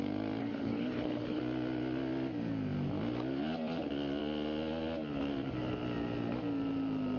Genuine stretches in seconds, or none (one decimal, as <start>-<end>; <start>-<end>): 0.0-0.4; 1.4-7.2